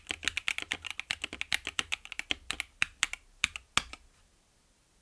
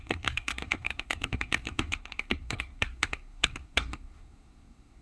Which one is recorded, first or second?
first